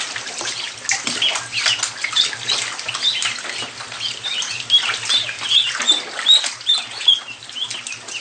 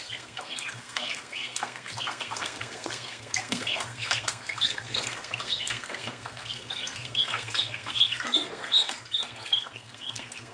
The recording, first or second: first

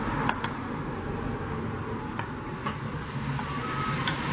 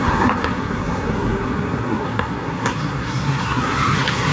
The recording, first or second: first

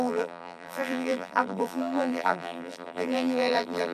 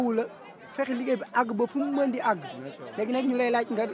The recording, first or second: second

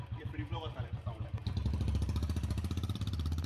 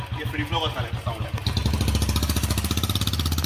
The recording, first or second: second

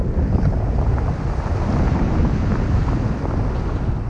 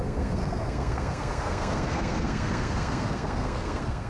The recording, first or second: first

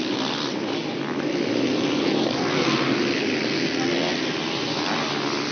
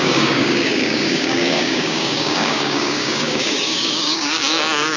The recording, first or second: first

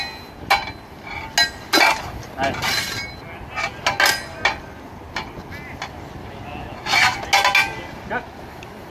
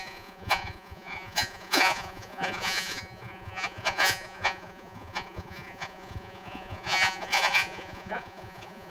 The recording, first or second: first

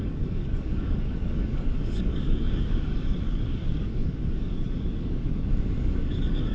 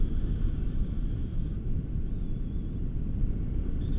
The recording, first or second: second